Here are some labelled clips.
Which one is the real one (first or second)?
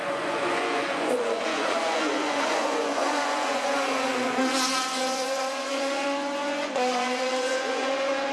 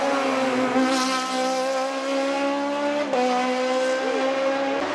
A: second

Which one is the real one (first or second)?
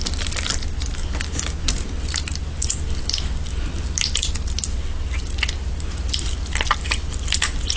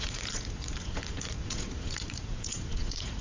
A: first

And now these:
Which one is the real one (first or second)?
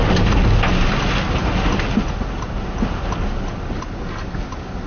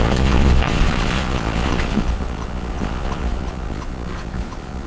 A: first